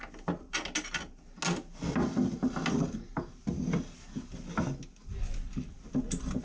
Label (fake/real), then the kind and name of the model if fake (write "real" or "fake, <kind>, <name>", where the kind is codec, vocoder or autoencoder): real